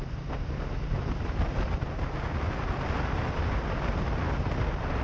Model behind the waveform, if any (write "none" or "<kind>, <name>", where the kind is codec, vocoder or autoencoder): none